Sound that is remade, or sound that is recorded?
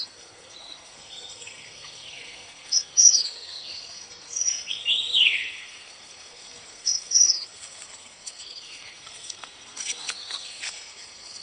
remade